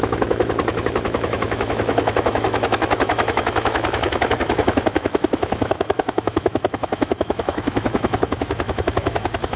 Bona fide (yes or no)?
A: no